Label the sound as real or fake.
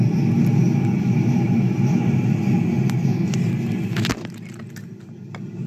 real